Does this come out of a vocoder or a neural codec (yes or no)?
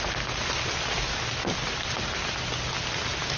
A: no